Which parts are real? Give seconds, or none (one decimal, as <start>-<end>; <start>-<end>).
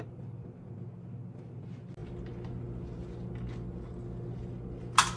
0.0-5.2